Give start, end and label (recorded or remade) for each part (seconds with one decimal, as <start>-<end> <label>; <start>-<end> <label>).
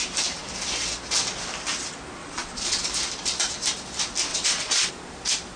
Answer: 0.0-2.2 recorded; 2.2-2.8 remade; 2.8-4.3 recorded; 4.3-4.9 remade; 4.9-5.6 recorded